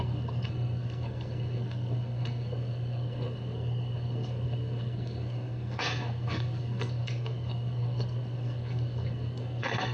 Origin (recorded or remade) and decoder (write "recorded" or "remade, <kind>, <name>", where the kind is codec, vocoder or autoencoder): remade, codec, SNAC